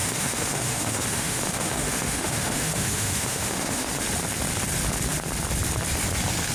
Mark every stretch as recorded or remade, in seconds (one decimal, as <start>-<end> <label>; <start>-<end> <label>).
0.0-3.9 remade; 3.9-6.5 recorded